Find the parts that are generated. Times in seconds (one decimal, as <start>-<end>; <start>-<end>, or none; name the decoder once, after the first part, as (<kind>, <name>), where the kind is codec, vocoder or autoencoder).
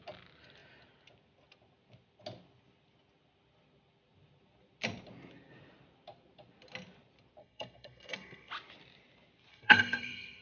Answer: 7.4-8.5 (codec, SNAC); 9.5-10.4